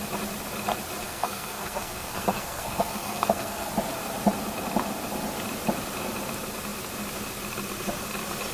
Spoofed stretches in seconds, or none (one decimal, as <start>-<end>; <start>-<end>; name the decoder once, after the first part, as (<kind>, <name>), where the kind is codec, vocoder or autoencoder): 1.0-3.7 (codec, SNAC)